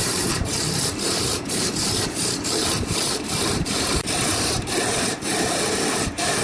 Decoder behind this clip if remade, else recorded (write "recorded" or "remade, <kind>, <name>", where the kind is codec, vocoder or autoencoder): remade, vocoder, BigVGAN v2